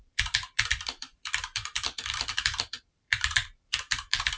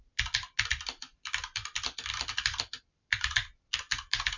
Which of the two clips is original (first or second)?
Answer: second